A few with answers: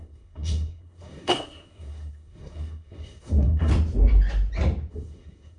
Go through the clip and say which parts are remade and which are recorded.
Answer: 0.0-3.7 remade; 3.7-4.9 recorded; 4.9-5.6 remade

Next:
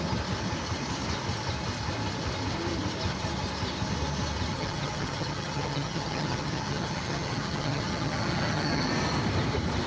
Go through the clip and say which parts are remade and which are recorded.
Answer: 0.0-4.5 recorded; 4.5-8.9 remade; 8.9-9.9 recorded

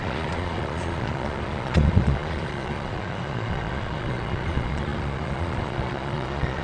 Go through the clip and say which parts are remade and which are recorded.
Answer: 0.0-6.6 remade

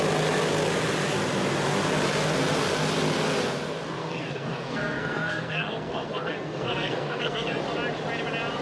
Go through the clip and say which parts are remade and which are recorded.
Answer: 0.0-4.0 recorded; 4.0-7.6 remade; 7.6-8.6 recorded